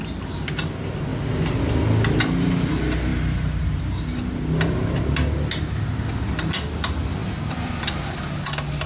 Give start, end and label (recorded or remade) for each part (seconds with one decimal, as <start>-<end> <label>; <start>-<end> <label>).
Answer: 0.0-8.9 recorded